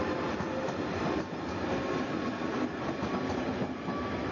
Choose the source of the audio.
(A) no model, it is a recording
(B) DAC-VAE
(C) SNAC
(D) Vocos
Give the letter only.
A